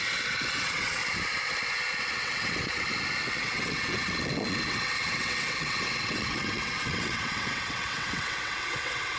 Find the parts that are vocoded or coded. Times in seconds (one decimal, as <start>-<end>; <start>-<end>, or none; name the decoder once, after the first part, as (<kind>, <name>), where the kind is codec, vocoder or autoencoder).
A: 0.0-1.0 (vocoder, WaveNeXt); 2.2-2.9; 3.4-9.2